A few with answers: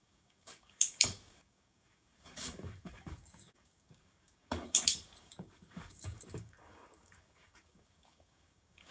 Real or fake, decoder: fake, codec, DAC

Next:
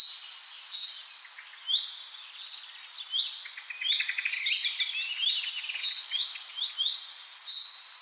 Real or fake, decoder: real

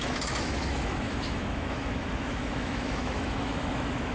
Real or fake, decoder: fake, autoencoder, DAC-VAE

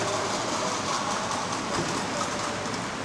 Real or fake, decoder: real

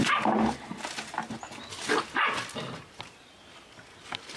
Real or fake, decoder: real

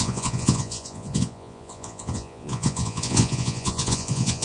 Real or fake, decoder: fake, vocoder, Vocos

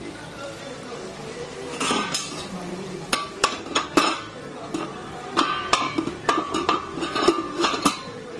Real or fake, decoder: fake, vocoder, BigVGAN v2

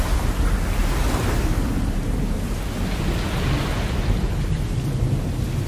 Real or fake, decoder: real